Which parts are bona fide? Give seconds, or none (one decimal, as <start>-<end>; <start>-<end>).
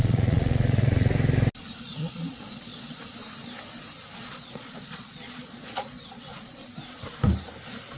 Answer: 1.1-1.8; 3.0-4.2; 6.6-8.0